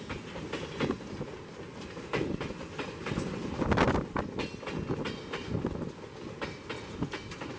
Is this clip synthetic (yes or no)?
no